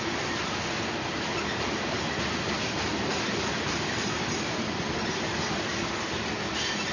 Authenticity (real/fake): real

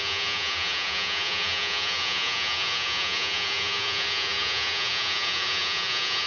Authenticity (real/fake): fake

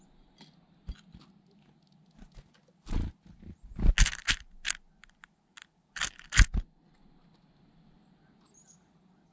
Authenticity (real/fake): real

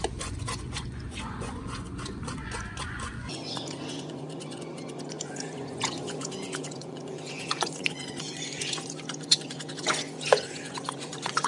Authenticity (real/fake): fake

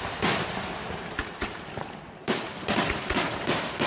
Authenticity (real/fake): real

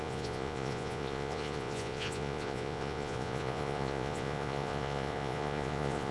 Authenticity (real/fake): fake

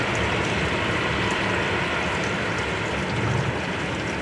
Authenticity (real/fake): real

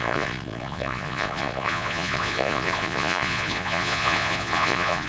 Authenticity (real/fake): fake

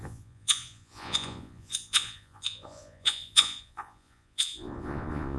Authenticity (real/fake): fake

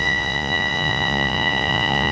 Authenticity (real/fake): fake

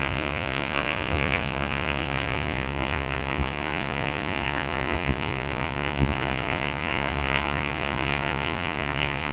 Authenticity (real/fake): fake